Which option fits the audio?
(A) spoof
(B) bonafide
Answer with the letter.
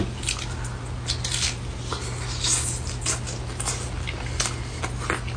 B